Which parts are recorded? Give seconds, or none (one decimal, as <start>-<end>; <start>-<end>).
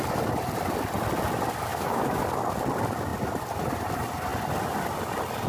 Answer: 0.0-1.7; 2.2-5.5